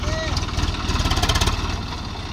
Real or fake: real